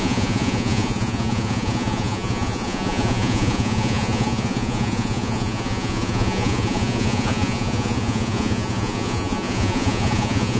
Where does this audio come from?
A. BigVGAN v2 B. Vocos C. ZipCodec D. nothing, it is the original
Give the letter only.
B